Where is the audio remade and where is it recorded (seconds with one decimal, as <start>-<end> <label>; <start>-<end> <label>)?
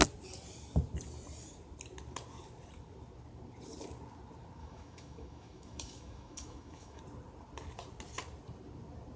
0.0-4.6 recorded; 4.6-7.0 remade; 7.0-9.2 recorded